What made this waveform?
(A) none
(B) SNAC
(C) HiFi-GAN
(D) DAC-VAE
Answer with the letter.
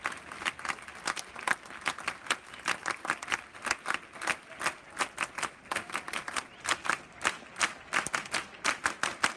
A